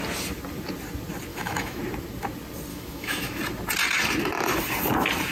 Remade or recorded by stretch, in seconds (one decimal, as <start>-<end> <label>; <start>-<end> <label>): 0.0-1.3 recorded; 1.3-1.8 remade; 1.8-2.7 recorded; 2.7-3.4 remade; 3.4-5.3 recorded